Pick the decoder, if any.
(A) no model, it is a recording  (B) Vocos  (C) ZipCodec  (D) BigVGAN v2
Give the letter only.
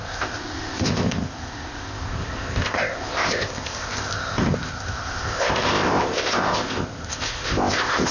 C